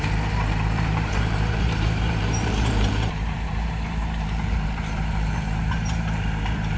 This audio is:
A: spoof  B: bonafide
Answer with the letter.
A